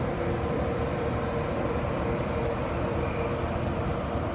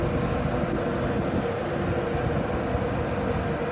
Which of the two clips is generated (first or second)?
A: first